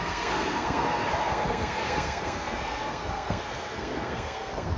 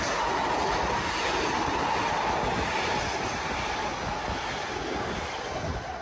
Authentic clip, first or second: second